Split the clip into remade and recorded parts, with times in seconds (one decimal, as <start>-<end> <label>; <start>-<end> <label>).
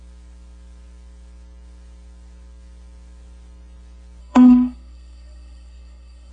0.0-4.2 recorded; 4.2-6.3 remade